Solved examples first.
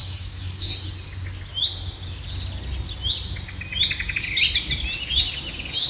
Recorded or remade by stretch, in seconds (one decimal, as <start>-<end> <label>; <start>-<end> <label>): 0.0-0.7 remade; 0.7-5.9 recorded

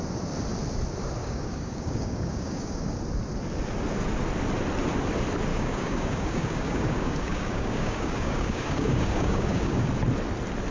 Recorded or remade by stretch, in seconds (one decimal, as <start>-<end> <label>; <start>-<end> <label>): 0.0-1.2 recorded; 1.2-2.9 remade; 2.9-5.5 recorded; 5.5-9.9 remade; 9.9-10.7 recorded

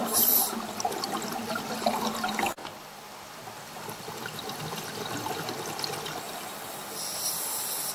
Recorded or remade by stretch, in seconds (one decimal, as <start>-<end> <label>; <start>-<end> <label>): 0.0-7.9 recorded